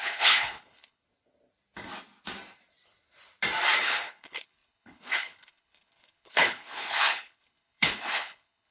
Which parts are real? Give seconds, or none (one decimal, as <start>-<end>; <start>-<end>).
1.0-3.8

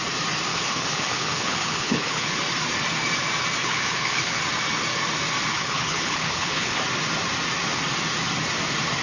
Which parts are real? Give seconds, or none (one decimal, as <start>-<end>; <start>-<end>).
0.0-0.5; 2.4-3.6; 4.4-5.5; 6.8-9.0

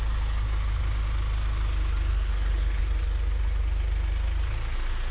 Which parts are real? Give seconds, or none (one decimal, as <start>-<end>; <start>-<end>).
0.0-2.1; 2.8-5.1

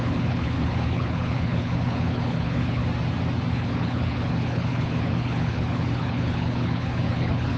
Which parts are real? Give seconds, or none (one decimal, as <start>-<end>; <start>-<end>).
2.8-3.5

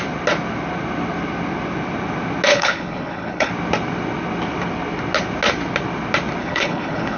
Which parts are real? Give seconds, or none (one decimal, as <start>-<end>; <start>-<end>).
0.0-2.5; 3.5-6.4

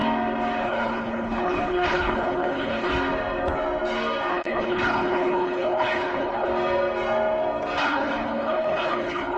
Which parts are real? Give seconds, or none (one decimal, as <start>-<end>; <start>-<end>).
0.0-0.6; 2.9-4.3; 6.5-7.8

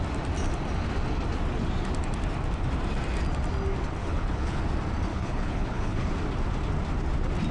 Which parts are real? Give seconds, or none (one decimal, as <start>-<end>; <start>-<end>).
0.0-4.0; 4.6-5.1; 6.1-7.5

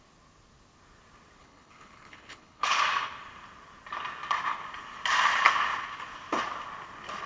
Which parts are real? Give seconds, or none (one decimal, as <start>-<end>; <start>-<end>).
0.0-1.4; 2.8-7.3